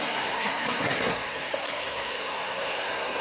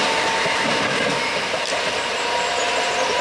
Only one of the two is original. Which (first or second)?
second